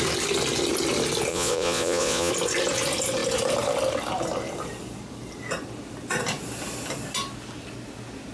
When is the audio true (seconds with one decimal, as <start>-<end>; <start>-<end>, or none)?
0.0-1.3; 2.3-8.3